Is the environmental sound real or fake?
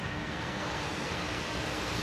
fake